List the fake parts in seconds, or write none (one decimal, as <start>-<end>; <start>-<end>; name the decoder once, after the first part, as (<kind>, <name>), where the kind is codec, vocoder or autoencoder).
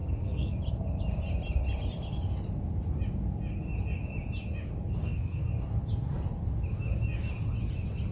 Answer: 0.0-0.5 (codec, SNAC); 5.0-5.5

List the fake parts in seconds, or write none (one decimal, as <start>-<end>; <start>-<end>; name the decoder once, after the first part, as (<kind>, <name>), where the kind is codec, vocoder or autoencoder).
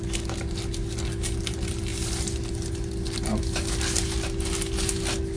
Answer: none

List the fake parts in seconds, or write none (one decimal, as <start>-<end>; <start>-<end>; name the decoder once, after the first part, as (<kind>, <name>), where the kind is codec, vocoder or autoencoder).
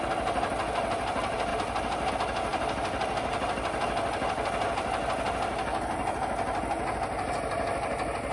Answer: none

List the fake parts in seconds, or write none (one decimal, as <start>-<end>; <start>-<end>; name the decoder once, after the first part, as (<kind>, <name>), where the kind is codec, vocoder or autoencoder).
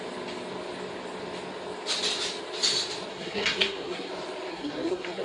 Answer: 3.1-4.1 (codec, SNAC); 4.5-5.2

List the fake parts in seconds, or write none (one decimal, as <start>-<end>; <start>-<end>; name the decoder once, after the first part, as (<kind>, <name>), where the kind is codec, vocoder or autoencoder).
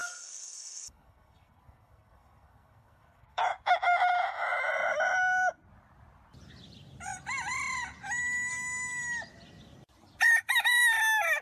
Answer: 0.0-3.4 (codec, SNAC)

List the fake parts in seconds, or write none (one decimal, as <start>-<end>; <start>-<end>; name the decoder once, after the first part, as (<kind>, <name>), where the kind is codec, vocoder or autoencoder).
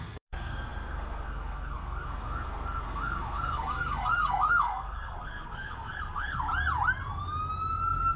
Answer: 0.0-6.5 (codec, SNAC)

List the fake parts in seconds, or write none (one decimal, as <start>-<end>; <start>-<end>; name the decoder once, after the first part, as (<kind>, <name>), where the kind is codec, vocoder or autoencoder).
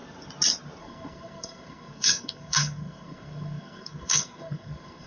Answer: 0.8-5.1 (codec, SNAC)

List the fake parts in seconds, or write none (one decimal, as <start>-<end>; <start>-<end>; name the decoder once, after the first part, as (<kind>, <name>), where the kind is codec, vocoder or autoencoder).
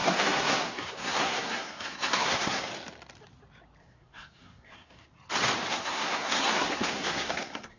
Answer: 0.0-2.7 (codec, SNAC); 3.8-5.1; 5.7-7.8